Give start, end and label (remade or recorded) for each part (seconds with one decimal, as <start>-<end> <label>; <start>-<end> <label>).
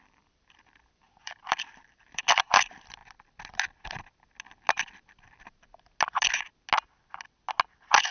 0.0-3.0 remade; 3.0-8.1 recorded